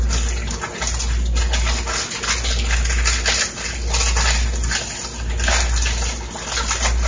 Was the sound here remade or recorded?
recorded